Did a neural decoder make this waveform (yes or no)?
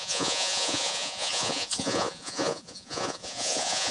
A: yes